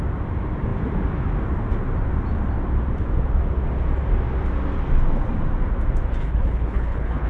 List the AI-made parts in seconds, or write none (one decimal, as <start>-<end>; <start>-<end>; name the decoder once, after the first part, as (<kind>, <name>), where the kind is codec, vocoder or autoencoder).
6.2-7.3 (codec, HILCodec)